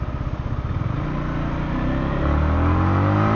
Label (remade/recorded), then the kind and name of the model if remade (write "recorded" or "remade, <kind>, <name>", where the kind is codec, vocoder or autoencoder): recorded